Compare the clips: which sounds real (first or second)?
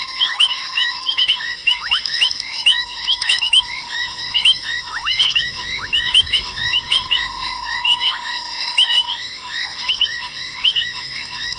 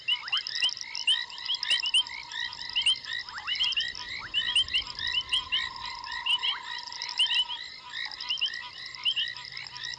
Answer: second